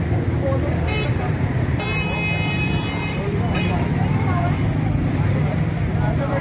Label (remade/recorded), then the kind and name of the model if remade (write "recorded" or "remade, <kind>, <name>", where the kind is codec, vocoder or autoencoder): recorded